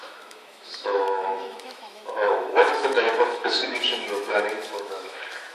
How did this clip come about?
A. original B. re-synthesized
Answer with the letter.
B